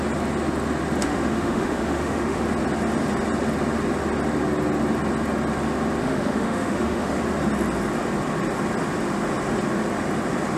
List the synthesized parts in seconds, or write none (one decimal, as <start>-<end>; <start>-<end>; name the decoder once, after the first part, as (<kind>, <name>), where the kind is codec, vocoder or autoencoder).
1.0-2.4 (autoencoder, DAC-VAE); 6.0-7.2